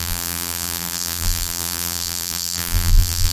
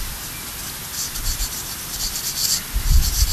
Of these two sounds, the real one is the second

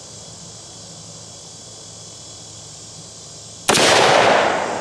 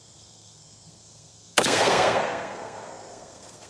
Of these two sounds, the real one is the first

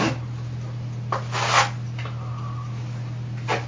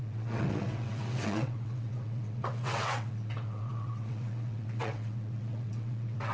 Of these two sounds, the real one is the first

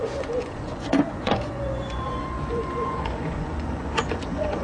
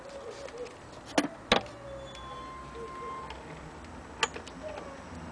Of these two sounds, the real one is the second